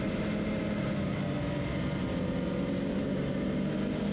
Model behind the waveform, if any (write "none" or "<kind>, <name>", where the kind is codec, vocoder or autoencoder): none